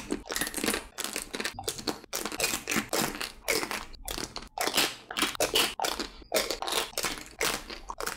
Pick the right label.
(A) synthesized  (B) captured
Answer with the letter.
B